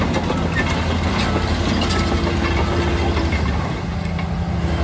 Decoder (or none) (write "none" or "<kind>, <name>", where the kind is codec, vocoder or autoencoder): none